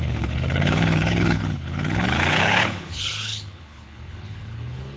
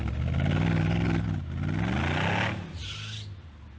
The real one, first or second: second